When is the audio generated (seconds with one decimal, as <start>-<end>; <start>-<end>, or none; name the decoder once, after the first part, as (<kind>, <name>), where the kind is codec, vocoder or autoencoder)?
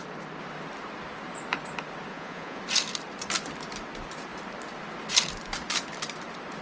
2.1-2.6 (vocoder, Vocos)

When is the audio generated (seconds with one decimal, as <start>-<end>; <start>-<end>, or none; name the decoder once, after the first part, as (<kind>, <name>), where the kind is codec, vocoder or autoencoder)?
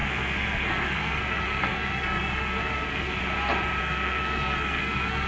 0.0-3.2 (codec, SNAC); 3.8-5.3